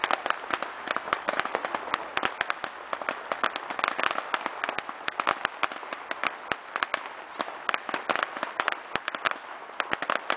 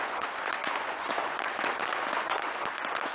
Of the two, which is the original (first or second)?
first